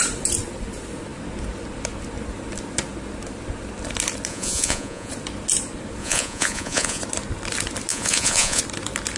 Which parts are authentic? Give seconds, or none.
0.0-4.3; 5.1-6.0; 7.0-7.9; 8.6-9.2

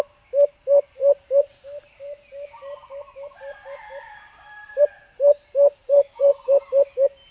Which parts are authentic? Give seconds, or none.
0.0-5.8; 6.5-7.3

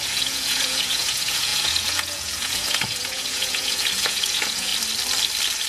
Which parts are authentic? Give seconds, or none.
4.7-5.7

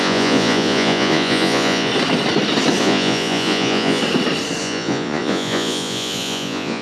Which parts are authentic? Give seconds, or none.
1.9-2.8; 4.0-4.6

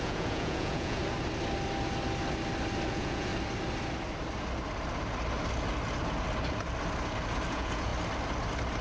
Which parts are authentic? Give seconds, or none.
1.0-2.9; 3.3-7.5; 7.9-8.8

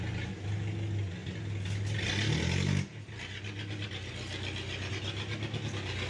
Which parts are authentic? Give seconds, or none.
0.0-6.1

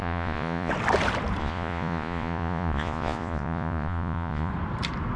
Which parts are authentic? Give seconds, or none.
0.7-1.4; 4.5-5.2